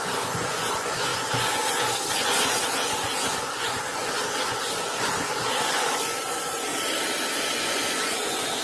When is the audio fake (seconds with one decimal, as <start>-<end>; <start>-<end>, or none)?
0.0-6.7; 7.4-8.6